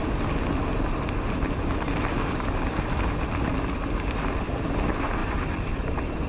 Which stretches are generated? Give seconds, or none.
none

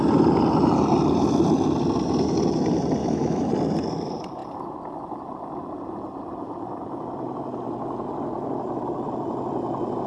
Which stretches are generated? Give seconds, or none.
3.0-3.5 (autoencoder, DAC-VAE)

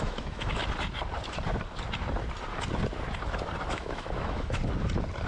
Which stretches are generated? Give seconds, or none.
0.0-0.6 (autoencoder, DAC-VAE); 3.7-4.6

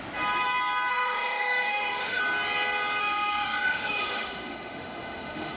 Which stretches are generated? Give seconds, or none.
0.9-2.2 (autoencoder, DAC-VAE); 3.0-5.6

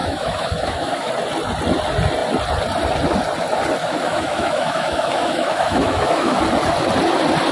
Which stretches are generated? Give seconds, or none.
0.0-1.1 (autoencoder, DAC-VAE); 3.8-6.4

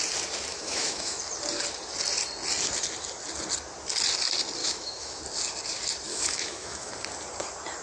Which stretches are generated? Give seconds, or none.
0.5-1.2 (autoencoder, DAC-VAE); 4.6-5.2; 6.1-6.9

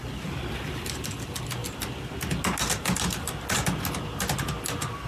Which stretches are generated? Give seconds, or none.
none

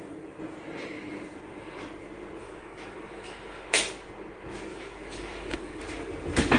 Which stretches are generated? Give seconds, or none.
2.4-3.8 (autoencoder, DAC-VAE); 4.7-5.8